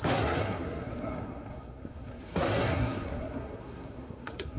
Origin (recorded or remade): remade